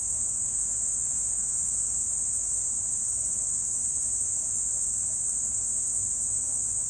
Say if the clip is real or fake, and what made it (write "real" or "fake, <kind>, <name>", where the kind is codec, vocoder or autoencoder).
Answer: fake, autoencoder, DAC-VAE